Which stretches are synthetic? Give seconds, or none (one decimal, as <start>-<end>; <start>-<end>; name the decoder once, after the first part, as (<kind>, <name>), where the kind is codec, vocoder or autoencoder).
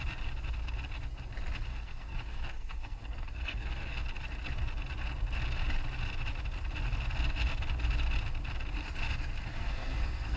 1.7-4.0 (codec, SNAC); 9.5-10.4